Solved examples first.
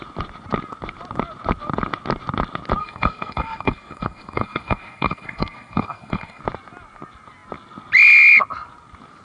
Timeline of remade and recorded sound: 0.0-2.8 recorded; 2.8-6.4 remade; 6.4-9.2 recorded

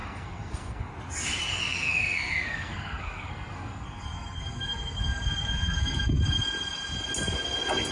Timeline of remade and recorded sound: 0.0-0.9 remade; 0.9-1.5 recorded; 1.5-6.2 remade; 6.2-7.9 recorded

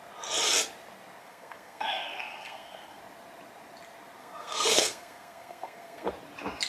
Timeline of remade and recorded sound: 0.0-1.2 recorded; 1.2-3.0 remade; 3.0-4.2 recorded; 4.2-6.1 remade; 6.1-6.7 recorded

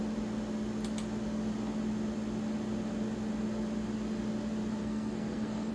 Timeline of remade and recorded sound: 0.0-4.8 recorded; 4.8-5.7 remade

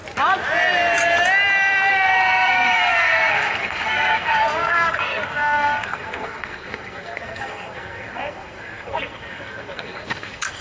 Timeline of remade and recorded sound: 0.0-1.9 recorded; 1.9-10.6 remade

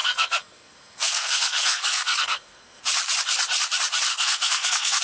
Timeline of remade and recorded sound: 0.0-2.8 remade; 2.8-4.1 recorded; 4.1-5.0 remade